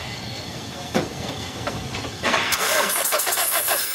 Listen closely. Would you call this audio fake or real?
fake